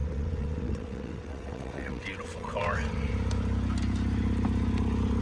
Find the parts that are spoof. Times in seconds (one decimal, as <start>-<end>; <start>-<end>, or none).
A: 0.0-3.1